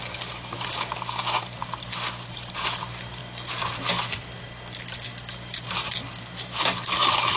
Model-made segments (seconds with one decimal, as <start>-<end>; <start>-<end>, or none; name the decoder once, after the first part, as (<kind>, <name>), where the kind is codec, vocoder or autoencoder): none